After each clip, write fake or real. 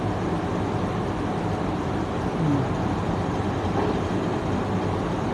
real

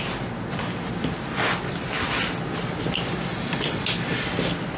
real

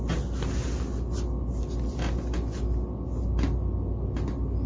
real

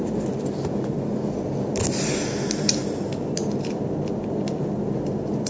real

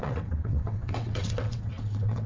fake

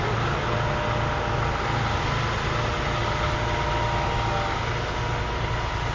real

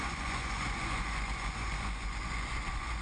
fake